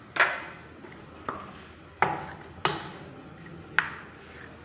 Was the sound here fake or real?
real